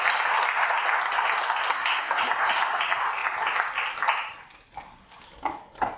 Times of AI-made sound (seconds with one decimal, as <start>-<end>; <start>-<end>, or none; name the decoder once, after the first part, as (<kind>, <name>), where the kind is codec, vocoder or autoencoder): 1.7-2.2 (codec, SNAC)